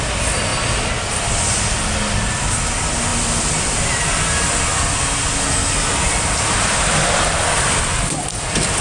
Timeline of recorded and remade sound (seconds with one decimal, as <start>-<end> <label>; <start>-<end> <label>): 0.0-8.8 recorded